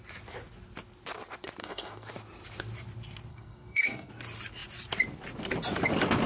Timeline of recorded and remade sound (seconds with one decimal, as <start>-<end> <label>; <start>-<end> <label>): 0.0-1.6 recorded; 1.6-2.1 remade; 2.1-3.3 recorded; 3.3-4.1 remade; 4.1-6.3 recorded